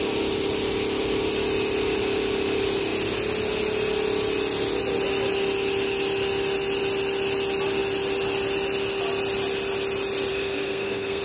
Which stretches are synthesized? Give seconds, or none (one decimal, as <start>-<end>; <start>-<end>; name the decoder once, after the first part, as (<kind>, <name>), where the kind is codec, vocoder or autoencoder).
10.3-11.2 (codec, SNAC)